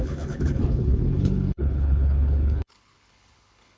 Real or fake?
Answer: fake